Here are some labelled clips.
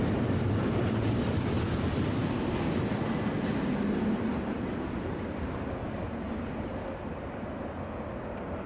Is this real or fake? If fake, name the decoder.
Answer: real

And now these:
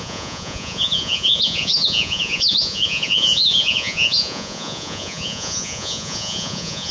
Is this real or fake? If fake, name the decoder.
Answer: fake, vocoder, Vocos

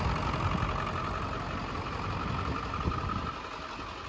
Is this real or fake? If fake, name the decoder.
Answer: real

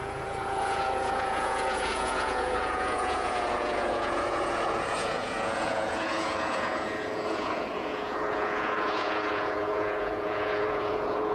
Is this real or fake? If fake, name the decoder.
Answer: fake, vocoder, Vocos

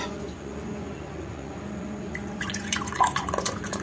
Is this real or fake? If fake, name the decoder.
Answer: fake, vocoder, Vocos